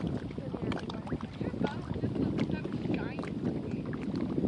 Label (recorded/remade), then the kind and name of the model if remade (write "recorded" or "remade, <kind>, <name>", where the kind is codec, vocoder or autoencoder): recorded